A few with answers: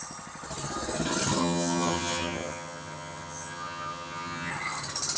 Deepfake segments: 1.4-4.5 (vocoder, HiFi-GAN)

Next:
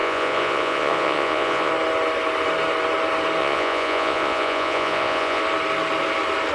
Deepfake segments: 0.0-1.7 (vocoder, Vocos); 3.4-5.4

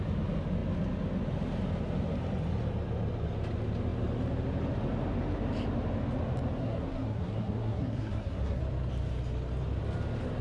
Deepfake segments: 6.6-8.6 (codec, SNAC)

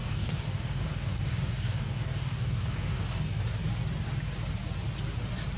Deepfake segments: 0.0-3.4 (codec, DAC)

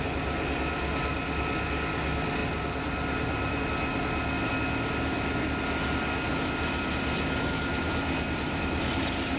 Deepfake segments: 2.4-3.6 (vocoder, BigVGAN v2); 6.3-9.4

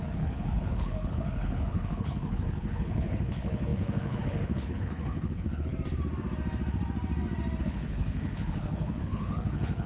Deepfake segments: 0.0-5.7 (codec, HILCodec); 7.6-9.9

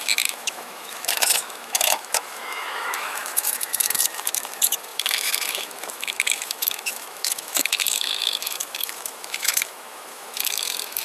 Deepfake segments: 0.0-11.0 (autoencoder, DAC-VAE)